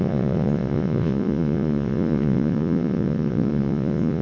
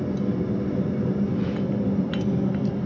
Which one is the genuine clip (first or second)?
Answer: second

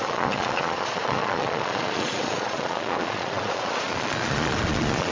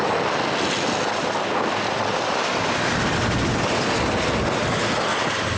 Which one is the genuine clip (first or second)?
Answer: second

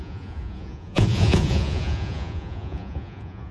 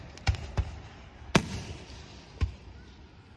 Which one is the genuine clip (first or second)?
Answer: second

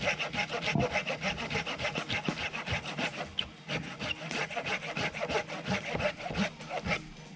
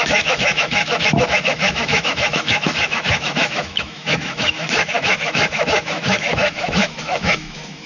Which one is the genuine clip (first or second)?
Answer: first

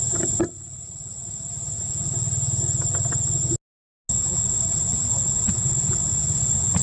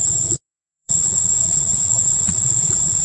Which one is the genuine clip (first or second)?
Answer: first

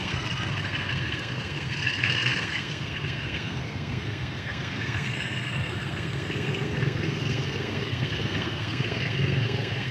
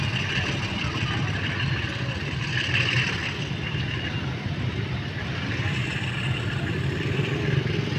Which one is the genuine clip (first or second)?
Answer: second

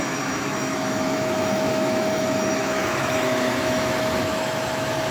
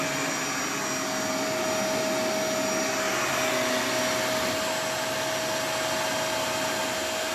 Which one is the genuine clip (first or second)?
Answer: second